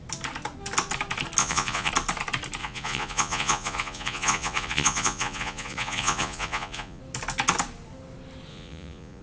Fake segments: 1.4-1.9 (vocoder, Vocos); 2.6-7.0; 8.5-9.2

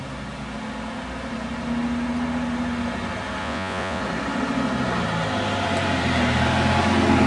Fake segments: 3.4-4.0 (vocoder, Vocos)

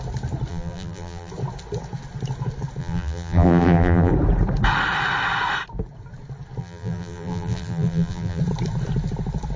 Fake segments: 0.5-1.3 (vocoder, BigVGAN v2); 2.8-4.1; 6.6-8.4

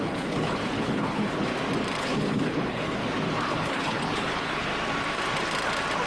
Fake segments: 0.0-1.5 (codec, HILCodec); 2.0-3.0; 3.5-4.7

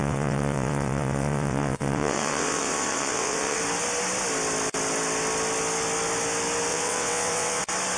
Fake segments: 0.0-3.6 (vocoder, WaveNeXt); 6.7-7.6

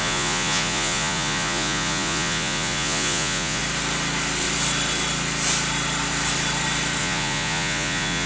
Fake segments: 0.0-3.6 (vocoder, Vocos); 7.0-8.3

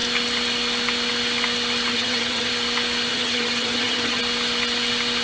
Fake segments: 1.9-2.5 (vocoder, HiFi-GAN); 3.1-4.2

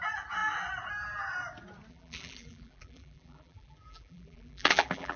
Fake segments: 1.9-5.2 (vocoder, BigVGAN v2)